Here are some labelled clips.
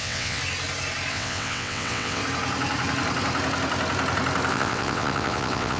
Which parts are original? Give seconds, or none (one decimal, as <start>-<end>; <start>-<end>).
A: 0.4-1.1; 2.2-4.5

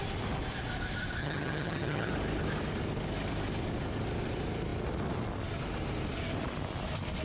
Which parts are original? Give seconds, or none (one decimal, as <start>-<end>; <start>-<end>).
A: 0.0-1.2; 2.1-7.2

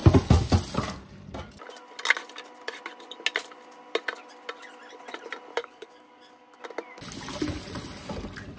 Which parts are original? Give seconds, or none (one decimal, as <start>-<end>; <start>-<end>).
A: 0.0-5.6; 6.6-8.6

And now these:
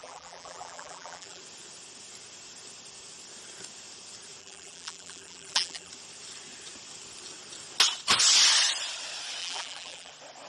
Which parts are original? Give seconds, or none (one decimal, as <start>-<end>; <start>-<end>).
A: 1.4-4.4; 5.9-9.4; 10.1-10.5